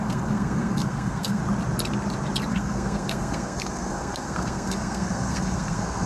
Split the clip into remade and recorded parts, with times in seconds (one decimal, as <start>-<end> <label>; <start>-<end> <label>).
0.0-1.4 remade; 1.4-2.5 recorded; 2.5-6.1 remade